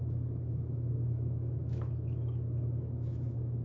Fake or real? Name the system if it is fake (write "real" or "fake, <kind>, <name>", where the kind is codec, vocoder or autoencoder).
fake, autoencoder, DAC-VAE